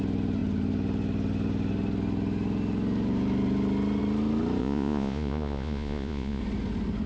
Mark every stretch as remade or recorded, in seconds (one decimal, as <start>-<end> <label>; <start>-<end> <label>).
0.0-4.6 recorded; 4.6-6.4 remade; 6.4-7.1 recorded

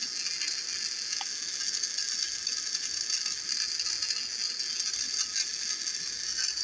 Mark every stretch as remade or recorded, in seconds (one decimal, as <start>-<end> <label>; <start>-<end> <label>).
0.0-6.6 recorded